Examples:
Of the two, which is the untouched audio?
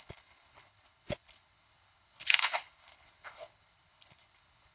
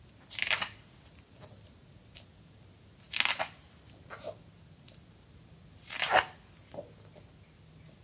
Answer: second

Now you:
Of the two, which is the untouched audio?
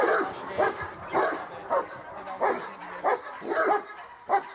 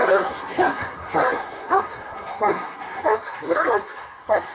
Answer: first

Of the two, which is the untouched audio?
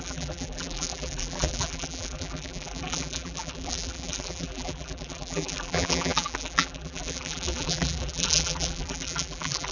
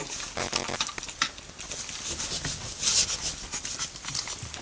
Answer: second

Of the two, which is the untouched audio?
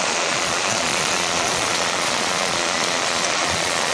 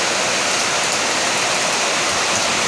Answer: second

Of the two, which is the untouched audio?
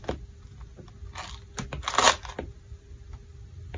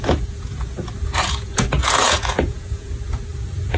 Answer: first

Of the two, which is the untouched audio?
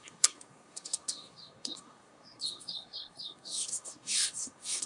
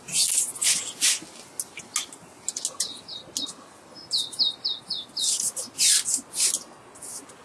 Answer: second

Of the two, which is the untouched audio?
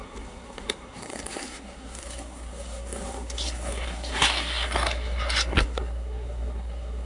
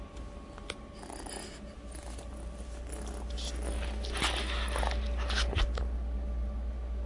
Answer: second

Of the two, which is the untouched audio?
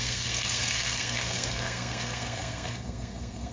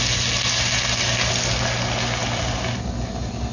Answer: second